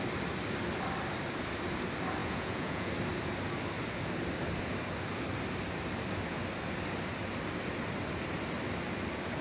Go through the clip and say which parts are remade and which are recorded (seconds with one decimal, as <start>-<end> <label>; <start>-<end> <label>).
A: 0.0-2.2 recorded; 2.2-2.9 remade; 2.9-9.4 recorded